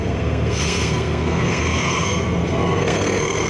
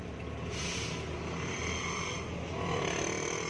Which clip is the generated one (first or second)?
first